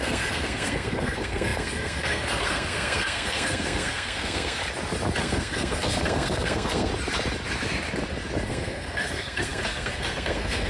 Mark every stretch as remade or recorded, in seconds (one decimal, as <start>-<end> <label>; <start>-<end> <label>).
0.0-4.6 remade; 4.6-5.2 recorded; 5.2-6.9 remade; 6.9-8.5 recorded; 8.5-10.7 remade